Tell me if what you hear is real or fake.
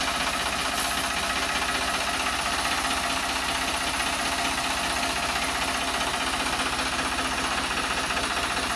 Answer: real